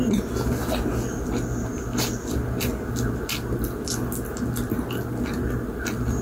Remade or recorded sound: recorded